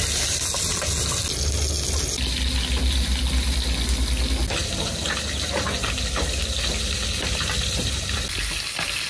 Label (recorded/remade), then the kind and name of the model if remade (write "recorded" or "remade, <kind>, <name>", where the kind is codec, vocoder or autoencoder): recorded